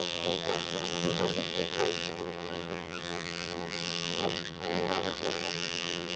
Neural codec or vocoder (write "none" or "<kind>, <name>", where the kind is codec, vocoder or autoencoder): vocoder, BigVGAN v2